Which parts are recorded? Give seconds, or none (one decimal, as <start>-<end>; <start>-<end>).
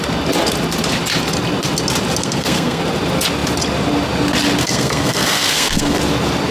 0.0-2.2; 2.8-4.6; 6.0-6.5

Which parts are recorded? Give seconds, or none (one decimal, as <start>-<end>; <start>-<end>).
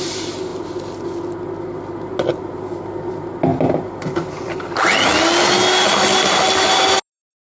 0.0-3.5; 5.1-7.4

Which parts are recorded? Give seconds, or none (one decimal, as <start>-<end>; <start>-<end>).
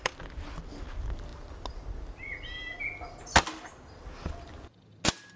0.0-5.4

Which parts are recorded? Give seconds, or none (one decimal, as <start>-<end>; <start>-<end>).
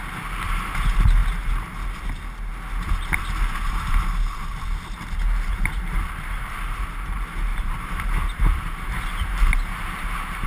0.0-5.5; 6.8-7.5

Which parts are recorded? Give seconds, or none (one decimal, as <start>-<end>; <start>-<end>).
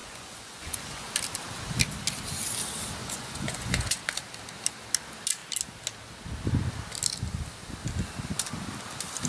1.1-3.0; 4.0-9.3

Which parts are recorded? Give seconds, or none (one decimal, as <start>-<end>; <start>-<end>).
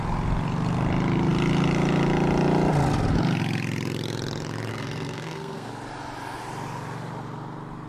0.0-4.7; 5.7-7.9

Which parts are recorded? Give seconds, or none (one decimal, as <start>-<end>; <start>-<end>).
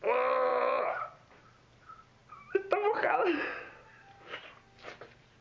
0.0-0.5; 1.0-5.4